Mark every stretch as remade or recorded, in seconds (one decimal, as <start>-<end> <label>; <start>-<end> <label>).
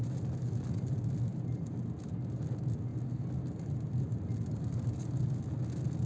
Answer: 0.0-1.3 recorded; 1.3-2.0 remade; 2.0-6.1 recorded